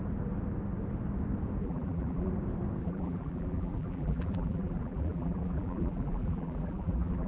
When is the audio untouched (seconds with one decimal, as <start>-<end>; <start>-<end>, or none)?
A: 0.0-1.6; 2.3-2.8